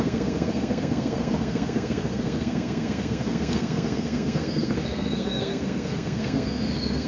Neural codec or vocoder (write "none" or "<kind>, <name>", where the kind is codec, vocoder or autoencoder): codec, SNAC